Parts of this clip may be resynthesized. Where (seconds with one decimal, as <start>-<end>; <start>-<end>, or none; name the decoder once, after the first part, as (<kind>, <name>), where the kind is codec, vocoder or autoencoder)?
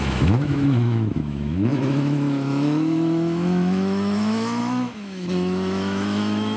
0.0-6.6 (autoencoder, DAC-VAE)